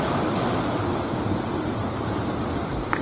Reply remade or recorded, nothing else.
recorded